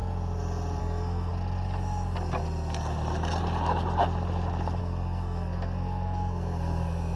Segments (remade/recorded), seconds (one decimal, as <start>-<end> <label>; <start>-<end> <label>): 0.0-0.8 recorded; 0.8-1.3 remade; 1.3-4.8 recorded; 4.8-7.2 remade